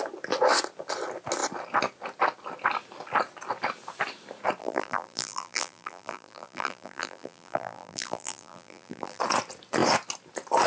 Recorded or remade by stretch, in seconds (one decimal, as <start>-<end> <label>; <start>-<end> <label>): 0.0-4.6 recorded; 4.6-9.2 remade; 9.2-10.7 recorded